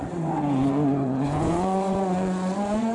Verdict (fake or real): fake